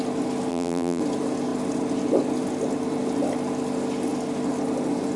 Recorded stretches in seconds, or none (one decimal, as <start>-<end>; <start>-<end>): 0.0-0.5; 1.0-5.2